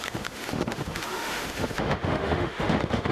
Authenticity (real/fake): fake